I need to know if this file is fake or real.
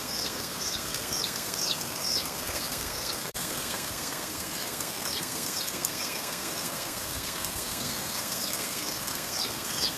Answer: fake